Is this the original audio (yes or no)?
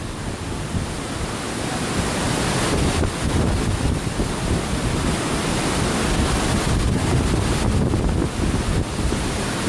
yes